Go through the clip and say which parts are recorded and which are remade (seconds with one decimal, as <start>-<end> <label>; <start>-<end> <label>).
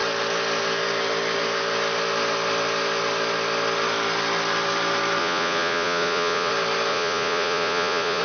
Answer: 0.0-5.2 recorded; 5.2-6.5 remade; 6.5-6.9 recorded; 6.9-8.2 remade